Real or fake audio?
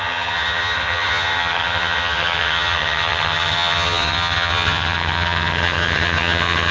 fake